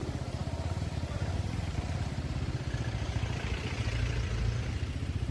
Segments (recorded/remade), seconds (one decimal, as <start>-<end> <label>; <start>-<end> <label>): 0.0-5.3 recorded